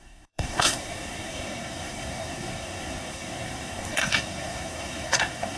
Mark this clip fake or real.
fake